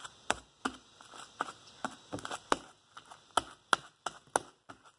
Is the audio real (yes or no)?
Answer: yes